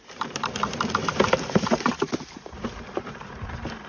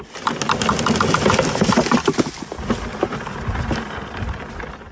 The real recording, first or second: second